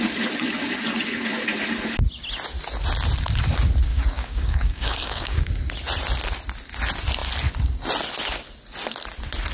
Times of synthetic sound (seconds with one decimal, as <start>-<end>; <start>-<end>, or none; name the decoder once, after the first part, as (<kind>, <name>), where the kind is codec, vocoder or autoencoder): 3.9-5.5 (codec, DAC)